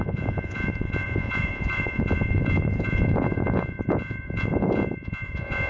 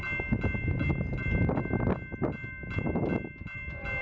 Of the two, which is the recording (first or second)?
second